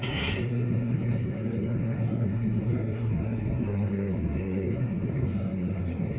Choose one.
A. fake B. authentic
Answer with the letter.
A